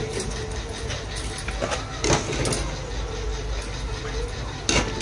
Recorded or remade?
recorded